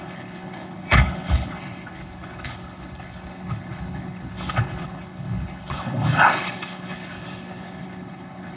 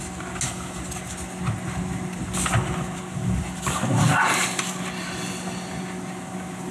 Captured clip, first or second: second